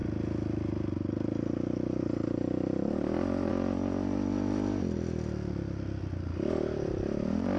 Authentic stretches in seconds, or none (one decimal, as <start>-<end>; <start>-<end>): 0.0-7.6